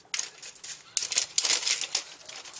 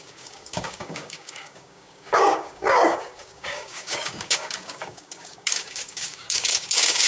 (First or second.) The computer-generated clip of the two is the second